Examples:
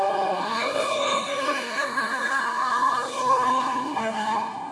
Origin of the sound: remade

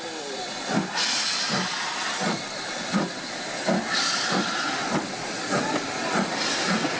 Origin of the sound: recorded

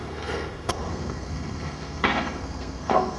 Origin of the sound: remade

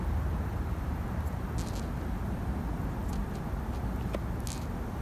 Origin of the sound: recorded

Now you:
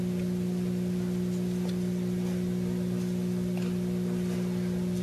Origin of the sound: recorded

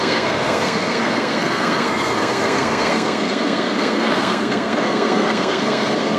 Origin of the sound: remade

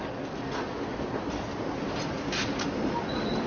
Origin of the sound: recorded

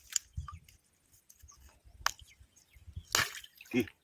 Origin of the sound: recorded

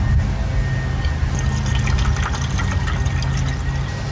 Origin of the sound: recorded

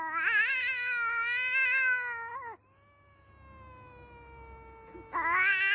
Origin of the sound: recorded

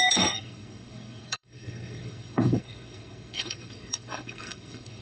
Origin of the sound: remade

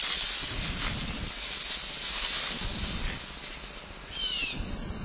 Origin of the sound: recorded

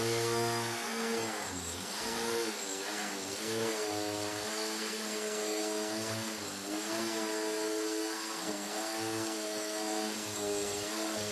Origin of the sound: remade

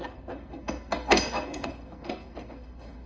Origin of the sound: remade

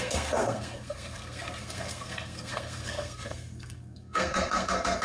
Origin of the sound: remade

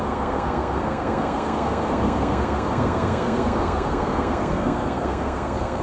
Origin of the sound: remade